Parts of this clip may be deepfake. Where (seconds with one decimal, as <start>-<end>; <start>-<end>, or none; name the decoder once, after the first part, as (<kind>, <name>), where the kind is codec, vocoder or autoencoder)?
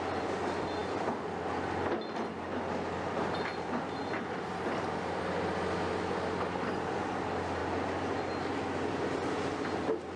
none